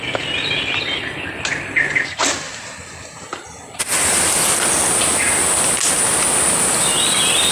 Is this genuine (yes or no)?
yes